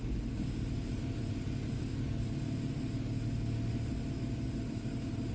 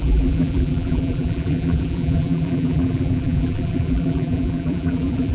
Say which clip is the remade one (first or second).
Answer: second